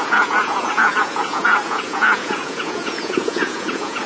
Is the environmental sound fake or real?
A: fake